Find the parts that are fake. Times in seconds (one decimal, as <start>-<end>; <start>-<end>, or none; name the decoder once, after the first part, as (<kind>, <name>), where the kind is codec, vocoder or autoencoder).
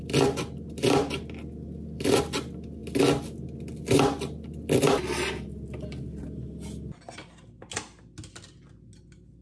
none